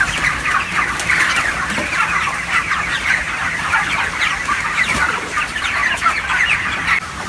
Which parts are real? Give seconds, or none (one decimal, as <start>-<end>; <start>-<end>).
none